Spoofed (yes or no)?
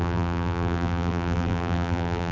yes